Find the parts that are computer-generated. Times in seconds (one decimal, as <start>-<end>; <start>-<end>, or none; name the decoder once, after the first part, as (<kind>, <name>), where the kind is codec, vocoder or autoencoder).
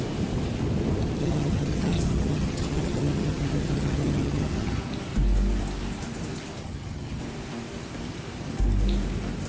1.2-4.8 (vocoder, HiFi-GAN); 6.6-7.2